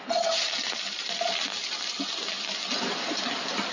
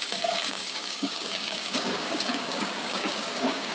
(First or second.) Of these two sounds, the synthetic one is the second